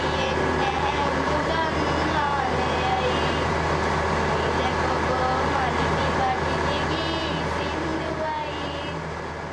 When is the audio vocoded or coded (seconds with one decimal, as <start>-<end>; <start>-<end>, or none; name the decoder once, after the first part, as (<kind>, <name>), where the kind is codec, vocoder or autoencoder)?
0.6-1.5 (vocoder, BigVGAN v2)